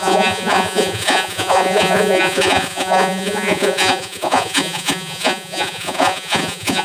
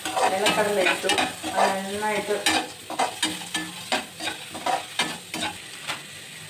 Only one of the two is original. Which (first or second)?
second